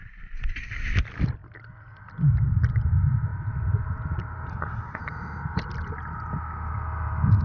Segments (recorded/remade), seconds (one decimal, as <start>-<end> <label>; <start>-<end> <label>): 0.0-4.5 recorded; 4.5-5.0 remade; 5.0-7.4 recorded